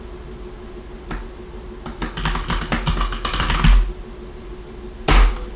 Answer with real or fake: real